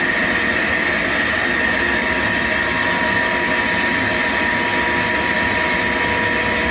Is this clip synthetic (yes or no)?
no